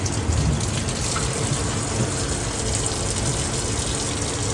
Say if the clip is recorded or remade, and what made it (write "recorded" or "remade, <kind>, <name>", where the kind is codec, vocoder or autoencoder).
recorded